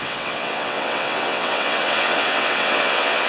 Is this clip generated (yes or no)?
yes